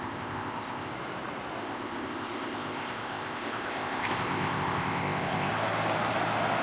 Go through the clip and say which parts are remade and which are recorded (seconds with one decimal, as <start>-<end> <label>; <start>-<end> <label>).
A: 0.0-0.9 remade; 0.9-1.6 recorded; 1.6-5.5 remade; 5.5-6.6 recorded